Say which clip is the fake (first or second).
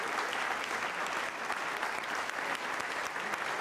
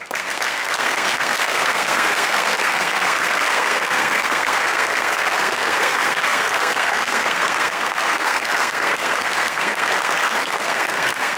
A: second